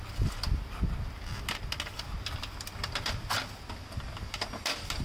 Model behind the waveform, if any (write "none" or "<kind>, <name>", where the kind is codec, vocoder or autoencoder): none